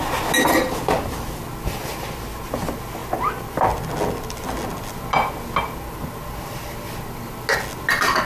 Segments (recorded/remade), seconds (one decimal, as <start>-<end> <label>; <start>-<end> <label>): 0.0-8.2 recorded